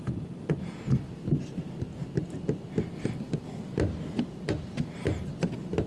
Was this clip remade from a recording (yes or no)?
no